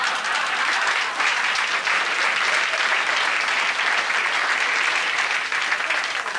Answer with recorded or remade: recorded